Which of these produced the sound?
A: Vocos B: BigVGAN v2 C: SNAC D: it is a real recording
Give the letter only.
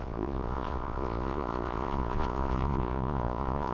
A